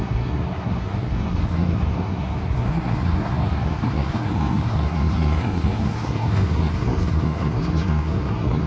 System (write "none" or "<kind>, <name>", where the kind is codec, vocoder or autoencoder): codec, SNAC